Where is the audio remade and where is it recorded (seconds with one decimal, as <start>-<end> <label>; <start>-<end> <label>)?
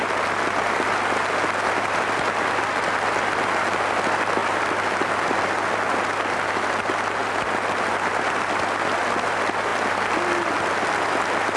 0.0-11.6 recorded